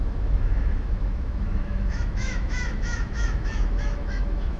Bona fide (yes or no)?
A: no